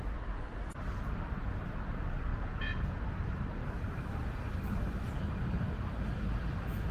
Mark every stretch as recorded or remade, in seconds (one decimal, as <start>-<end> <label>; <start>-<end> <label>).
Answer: 0.0-2.3 recorded; 2.3-3.0 remade; 3.0-6.9 recorded